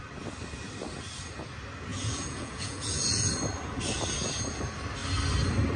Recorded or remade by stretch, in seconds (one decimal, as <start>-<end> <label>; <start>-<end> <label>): 0.0-1.9 recorded; 1.9-3.3 remade; 3.3-5.8 recorded